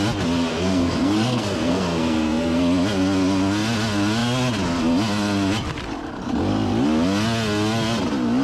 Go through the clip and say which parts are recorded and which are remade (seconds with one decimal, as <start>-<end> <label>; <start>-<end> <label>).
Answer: 0.0-0.5 recorded; 0.5-2.6 remade; 2.6-8.4 recorded